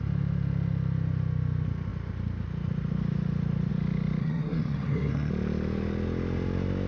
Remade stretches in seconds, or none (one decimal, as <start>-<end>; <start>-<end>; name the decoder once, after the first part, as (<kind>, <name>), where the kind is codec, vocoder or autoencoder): 4.2-5.3 (codec, SNAC)